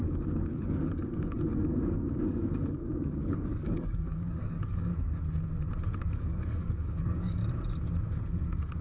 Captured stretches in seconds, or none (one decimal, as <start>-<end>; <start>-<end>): 4.9-6.0; 7.4-8.3